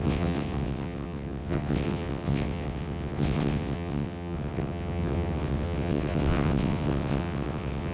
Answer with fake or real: fake